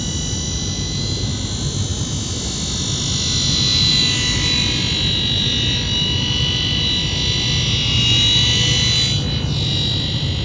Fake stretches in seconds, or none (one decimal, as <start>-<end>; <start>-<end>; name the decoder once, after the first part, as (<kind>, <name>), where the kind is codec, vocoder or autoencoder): none